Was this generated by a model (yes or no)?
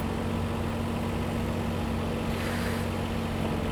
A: no